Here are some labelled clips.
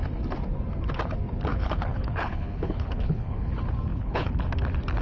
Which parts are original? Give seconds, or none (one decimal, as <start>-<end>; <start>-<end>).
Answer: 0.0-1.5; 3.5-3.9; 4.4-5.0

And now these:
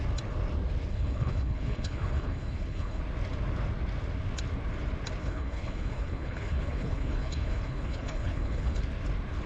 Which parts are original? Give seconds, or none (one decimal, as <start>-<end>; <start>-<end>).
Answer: 0.0-0.9; 3.0-5.2; 8.8-9.5

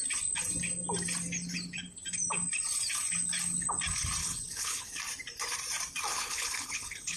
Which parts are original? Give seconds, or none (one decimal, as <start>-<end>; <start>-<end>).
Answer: 0.0-4.2; 5.0-6.1

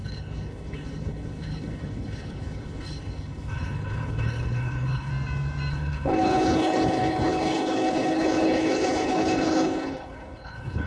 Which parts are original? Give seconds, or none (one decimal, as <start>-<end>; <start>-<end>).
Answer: 5.1-5.7

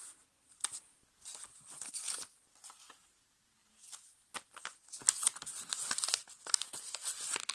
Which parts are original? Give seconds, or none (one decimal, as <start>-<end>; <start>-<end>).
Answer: 0.0-7.5

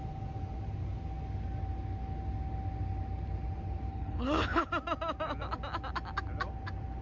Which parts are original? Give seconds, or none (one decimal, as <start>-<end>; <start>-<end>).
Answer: 0.0-3.9; 4.7-7.0

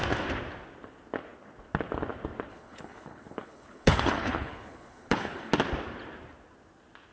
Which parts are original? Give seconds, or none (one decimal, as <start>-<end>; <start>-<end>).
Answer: 0.0-2.5; 5.5-7.1

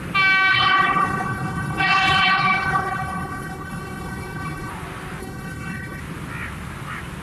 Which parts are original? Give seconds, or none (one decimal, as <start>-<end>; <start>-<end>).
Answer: 0.0-0.5; 4.7-5.2; 6.0-7.2